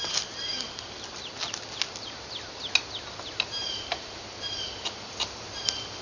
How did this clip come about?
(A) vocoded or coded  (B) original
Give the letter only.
B